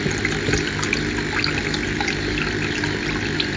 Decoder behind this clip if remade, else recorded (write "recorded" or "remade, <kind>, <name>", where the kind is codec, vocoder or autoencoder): recorded